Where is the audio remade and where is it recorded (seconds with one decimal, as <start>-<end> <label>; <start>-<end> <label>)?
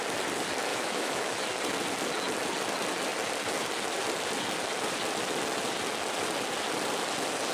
0.0-0.7 recorded; 0.7-1.4 remade; 1.4-7.5 recorded